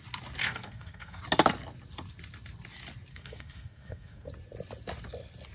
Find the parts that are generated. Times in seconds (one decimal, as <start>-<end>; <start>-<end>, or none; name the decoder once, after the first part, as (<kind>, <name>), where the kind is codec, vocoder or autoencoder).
0.4-1.2 (codec, SNAC); 3.1-4.3